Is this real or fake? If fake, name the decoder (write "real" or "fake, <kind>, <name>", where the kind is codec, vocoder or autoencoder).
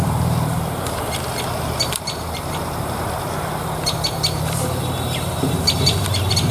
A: fake, vocoder, BigVGAN v2